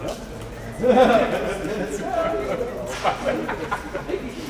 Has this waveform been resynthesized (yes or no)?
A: no